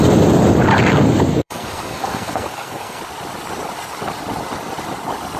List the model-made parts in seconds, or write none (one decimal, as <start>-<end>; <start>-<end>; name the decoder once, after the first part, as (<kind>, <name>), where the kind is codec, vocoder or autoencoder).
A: 1.3-3.0 (codec, SNAC)